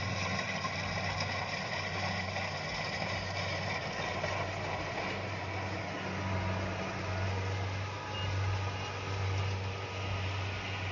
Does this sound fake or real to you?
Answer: real